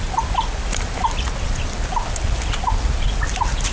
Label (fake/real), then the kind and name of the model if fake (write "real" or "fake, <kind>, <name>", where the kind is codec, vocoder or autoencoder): real